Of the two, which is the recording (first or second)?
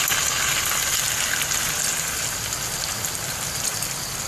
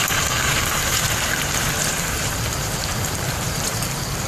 first